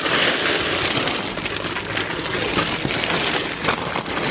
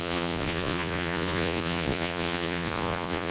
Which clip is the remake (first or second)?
second